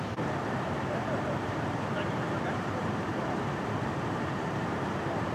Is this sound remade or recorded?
remade